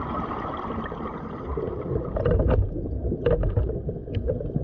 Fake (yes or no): no